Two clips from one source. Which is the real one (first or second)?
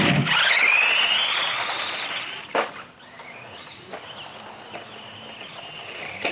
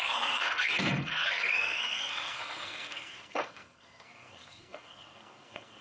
first